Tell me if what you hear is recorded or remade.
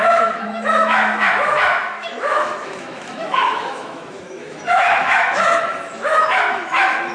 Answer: remade